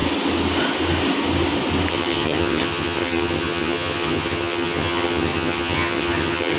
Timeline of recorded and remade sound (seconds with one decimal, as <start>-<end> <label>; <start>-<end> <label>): 0.0-1.9 recorded; 1.9-6.6 remade